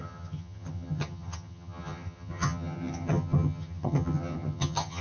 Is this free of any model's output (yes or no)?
no